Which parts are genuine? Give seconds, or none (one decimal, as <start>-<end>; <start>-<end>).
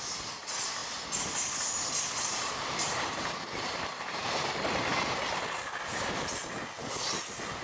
0.8-2.3; 4.9-7.6